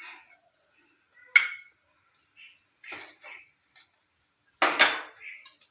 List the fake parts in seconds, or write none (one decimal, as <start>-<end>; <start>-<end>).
none